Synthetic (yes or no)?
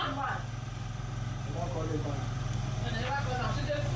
no